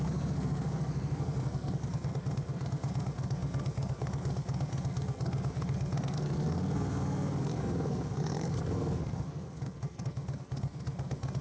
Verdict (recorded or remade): remade